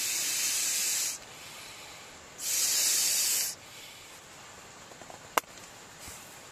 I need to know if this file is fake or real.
real